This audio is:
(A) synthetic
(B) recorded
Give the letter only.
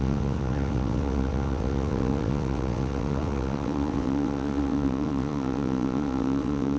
A